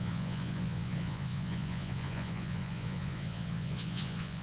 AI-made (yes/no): yes